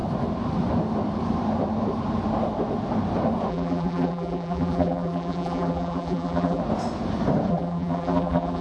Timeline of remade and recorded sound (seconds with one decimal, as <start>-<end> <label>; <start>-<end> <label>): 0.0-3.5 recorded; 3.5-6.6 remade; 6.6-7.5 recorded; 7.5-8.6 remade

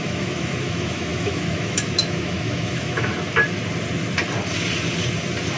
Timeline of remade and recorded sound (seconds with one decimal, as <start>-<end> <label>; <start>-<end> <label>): 0.0-3.1 remade; 3.1-5.6 recorded

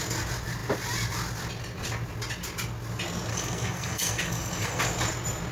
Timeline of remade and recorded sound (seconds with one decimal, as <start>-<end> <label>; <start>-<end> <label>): 0.0-3.3 recorded; 3.3-4.8 remade; 4.8-5.5 recorded

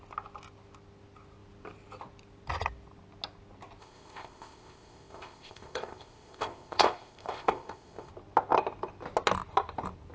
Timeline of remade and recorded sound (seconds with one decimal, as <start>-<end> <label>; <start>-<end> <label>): 0.0-3.8 recorded; 3.8-8.1 remade; 8.1-10.1 recorded